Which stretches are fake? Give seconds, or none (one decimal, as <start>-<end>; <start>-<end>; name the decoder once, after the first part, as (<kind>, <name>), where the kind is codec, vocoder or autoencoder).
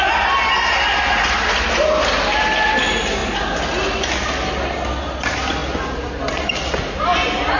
none